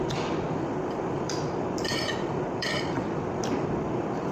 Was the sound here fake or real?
fake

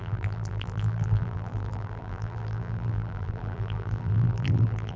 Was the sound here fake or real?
fake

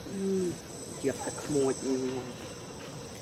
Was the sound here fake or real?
real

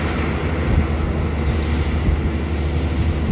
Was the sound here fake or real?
real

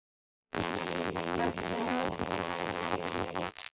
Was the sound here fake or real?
fake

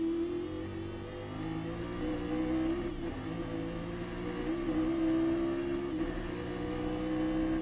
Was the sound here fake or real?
real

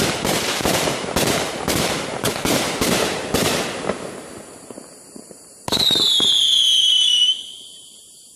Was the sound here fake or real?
fake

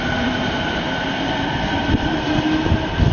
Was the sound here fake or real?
fake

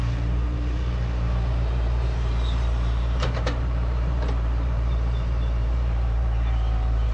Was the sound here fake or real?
fake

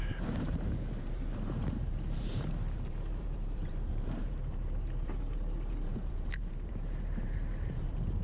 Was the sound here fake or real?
fake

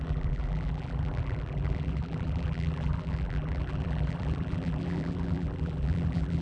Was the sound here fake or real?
fake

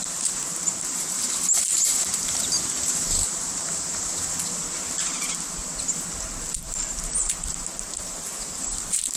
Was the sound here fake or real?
fake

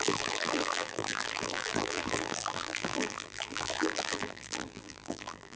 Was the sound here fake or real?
fake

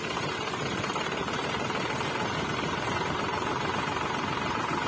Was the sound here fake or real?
fake